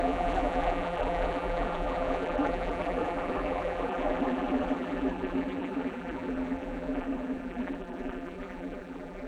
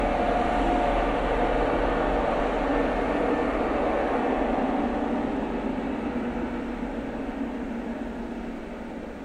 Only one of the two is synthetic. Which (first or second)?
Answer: first